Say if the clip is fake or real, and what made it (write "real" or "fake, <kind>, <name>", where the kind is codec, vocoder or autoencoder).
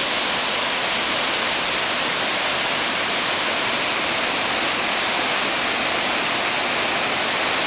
real